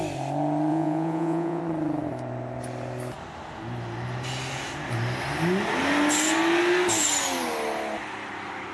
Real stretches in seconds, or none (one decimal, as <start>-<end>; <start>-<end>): 0.0-0.7; 1.6-8.7